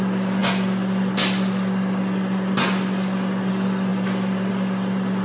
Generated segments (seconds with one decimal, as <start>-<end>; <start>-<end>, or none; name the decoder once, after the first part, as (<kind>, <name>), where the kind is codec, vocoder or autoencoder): none